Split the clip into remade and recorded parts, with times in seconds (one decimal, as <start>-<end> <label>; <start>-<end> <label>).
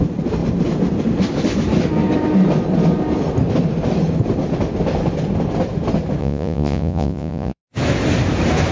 0.0-6.2 recorded; 6.2-7.6 remade; 7.6-8.7 recorded